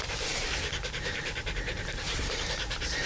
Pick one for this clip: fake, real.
fake